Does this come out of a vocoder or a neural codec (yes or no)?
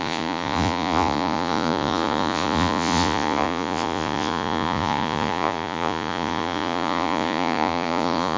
yes